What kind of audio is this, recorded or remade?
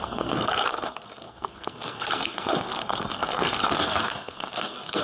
remade